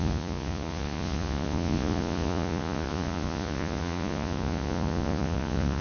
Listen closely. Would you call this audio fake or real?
fake